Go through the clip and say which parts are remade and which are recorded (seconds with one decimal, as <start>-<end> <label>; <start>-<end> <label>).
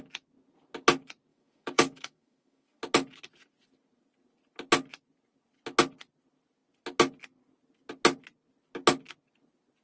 0.0-1.3 recorded; 1.3-2.8 remade; 2.8-9.8 recorded